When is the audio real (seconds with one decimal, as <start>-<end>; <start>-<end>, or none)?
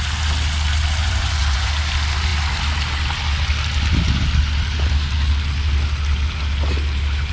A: 0.0-1.0; 1.7-7.3